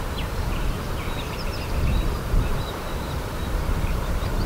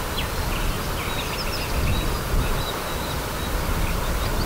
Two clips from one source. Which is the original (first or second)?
second